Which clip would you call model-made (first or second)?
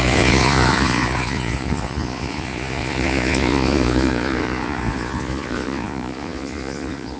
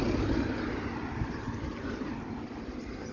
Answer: first